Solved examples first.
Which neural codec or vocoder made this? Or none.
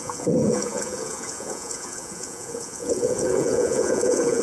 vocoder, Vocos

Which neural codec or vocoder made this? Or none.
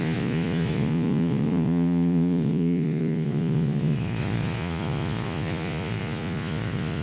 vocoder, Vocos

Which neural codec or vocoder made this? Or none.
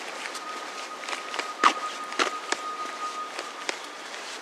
none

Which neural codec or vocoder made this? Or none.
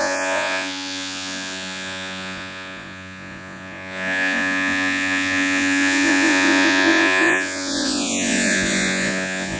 vocoder, Vocos